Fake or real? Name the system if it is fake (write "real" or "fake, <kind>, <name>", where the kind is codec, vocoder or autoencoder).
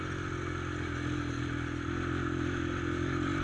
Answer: real